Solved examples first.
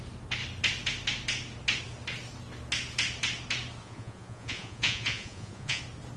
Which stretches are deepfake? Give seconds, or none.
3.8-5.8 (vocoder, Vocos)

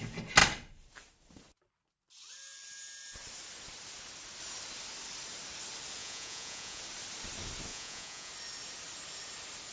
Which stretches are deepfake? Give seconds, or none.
6.0-6.8 (vocoder, Vocos); 7.7-8.3

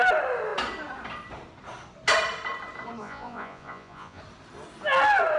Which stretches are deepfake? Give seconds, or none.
3.0-4.2 (vocoder, Vocos)